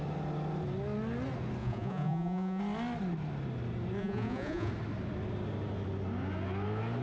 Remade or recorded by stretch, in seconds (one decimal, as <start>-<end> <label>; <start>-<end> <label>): 0.0-1.6 recorded; 1.6-2.6 remade; 2.6-4.0 recorded; 4.0-4.7 remade; 4.7-7.0 recorded